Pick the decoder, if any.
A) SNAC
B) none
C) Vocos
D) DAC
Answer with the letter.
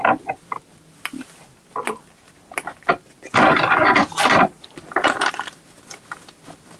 B